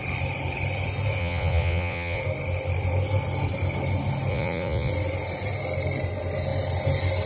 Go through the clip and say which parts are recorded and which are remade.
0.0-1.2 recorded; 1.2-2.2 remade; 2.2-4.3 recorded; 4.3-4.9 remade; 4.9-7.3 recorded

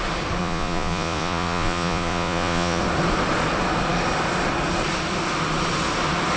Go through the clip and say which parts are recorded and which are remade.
0.0-0.4 recorded; 0.4-2.8 remade; 2.8-6.4 recorded